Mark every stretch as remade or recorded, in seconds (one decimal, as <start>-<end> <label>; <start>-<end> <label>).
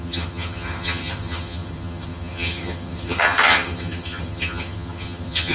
0.0-5.5 remade